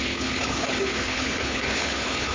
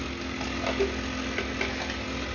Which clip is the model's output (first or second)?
first